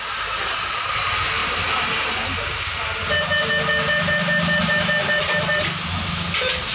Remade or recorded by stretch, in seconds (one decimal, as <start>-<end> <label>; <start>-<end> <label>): 0.0-6.7 recorded